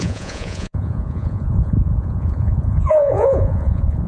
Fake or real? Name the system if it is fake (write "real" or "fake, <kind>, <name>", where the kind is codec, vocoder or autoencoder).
fake, vocoder, Vocos